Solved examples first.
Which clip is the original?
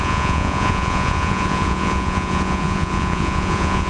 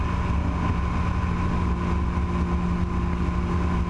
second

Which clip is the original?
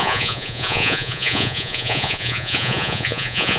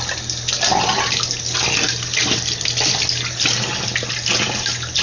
second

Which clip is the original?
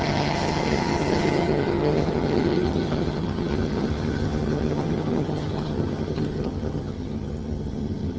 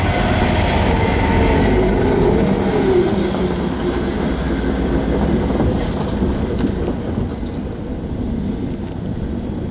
second